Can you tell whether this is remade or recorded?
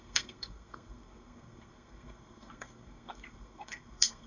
remade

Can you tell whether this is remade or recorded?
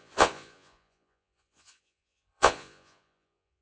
remade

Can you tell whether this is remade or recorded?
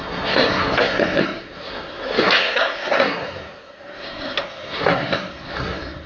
remade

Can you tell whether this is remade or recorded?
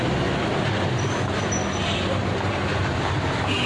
recorded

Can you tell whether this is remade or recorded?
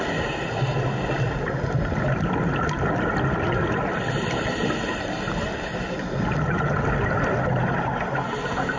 recorded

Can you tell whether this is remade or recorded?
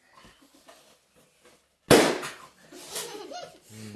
recorded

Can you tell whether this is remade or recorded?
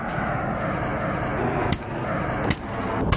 recorded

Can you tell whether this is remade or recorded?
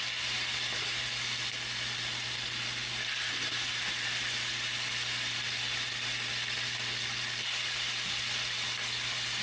recorded